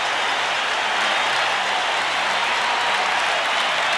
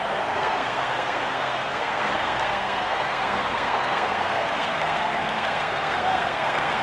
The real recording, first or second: first